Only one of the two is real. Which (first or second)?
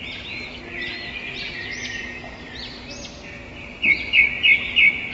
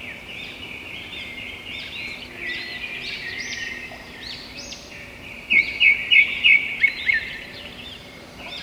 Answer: first